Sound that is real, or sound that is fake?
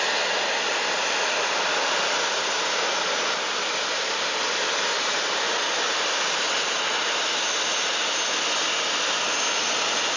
real